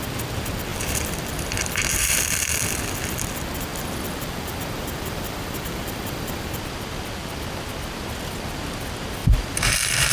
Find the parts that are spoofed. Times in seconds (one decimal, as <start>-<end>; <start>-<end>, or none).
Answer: 0.7-1.9; 3.7-6.4; 9.2-10.1